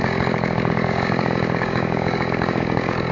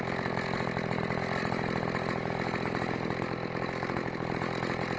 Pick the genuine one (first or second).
second